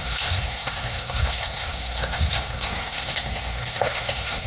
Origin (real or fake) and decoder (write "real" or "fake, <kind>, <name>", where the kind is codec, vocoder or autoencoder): fake, codec, SNAC